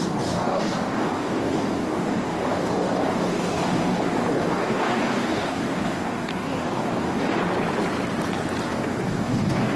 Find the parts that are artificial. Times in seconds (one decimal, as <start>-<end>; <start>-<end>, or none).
0.0-7.4; 8.6-9.8